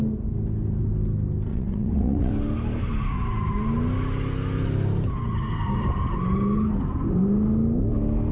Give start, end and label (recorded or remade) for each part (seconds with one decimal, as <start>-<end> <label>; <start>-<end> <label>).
0.0-1.5 recorded; 1.5-2.3 remade; 2.3-8.3 recorded